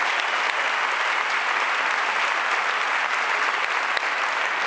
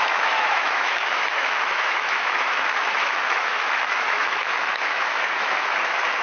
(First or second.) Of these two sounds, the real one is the first